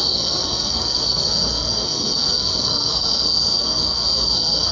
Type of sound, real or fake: fake